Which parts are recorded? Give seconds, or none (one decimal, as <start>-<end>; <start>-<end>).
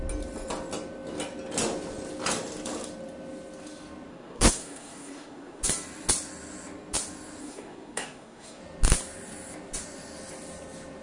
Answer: 0.0-4.1; 5.6-7.4; 8.6-11.0